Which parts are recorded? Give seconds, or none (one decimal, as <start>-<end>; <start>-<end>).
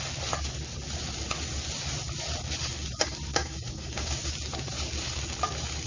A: 0.0-3.3; 4.3-5.9